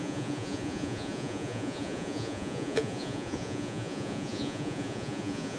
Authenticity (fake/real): fake